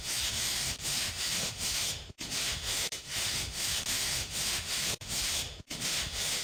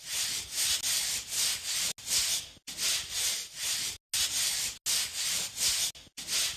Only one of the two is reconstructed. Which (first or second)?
first